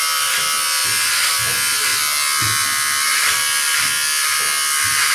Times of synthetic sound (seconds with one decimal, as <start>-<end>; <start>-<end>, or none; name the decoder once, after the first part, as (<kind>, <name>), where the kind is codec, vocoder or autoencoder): 0.0-1.9 (vocoder, BigVGAN v2)